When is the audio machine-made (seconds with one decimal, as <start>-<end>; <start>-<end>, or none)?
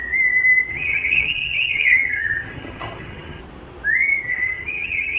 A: 0.7-3.4; 4.3-5.2